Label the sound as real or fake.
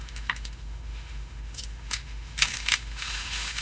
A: fake